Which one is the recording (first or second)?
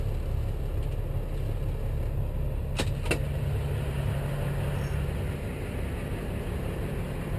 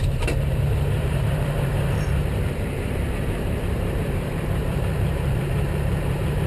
first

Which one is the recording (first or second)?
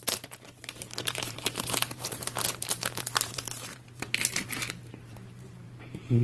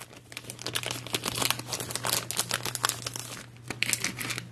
second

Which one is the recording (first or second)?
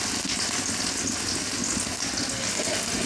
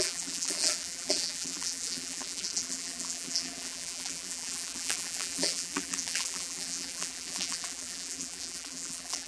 first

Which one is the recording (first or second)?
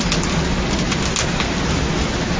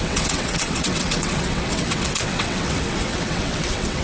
first